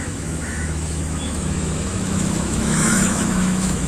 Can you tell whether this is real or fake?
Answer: fake